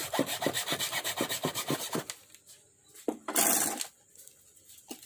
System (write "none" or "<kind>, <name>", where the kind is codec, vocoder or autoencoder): none